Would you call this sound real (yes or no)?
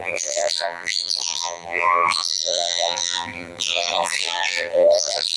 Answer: no